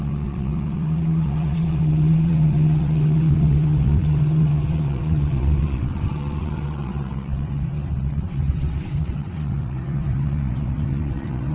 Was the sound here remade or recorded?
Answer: remade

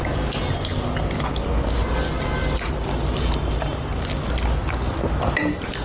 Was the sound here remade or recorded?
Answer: recorded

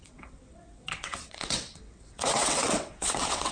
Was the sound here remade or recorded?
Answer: remade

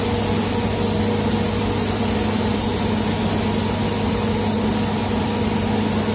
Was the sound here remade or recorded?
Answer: recorded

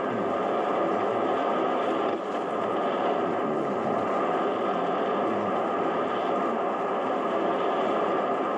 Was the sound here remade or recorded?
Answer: recorded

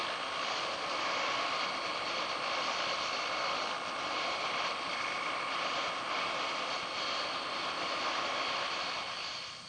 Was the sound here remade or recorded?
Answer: recorded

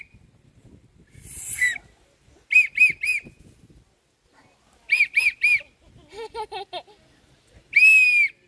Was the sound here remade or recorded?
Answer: recorded